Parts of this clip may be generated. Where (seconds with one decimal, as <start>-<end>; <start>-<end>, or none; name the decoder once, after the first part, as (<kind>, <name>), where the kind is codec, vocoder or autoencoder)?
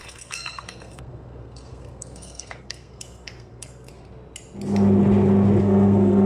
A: 0.0-3.9 (codec, SNAC); 5.6-6.3